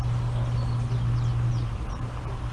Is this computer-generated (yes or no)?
no